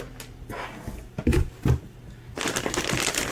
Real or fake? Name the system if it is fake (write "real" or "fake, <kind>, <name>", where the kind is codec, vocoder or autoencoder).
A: real